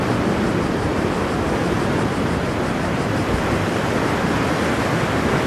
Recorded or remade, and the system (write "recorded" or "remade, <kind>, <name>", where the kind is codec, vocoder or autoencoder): remade, vocoder, BigVGAN v2